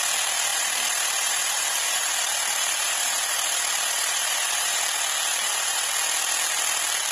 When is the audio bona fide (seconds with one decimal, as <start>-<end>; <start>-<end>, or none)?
0.0-0.5; 4.8-5.3; 5.9-7.1